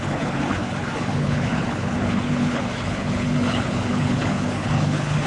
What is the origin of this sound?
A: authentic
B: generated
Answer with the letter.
B